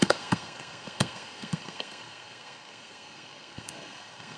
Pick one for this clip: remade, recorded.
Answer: remade